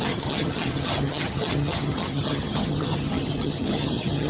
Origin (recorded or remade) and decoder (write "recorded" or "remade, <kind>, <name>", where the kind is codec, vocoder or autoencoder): remade, vocoder, HiFi-GAN